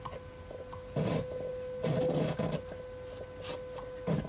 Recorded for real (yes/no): yes